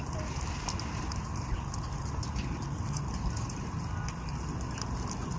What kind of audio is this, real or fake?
real